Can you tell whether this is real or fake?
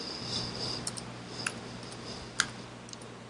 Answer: real